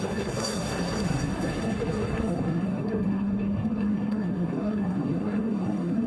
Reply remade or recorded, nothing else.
remade